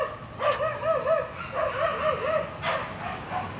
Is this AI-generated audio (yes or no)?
no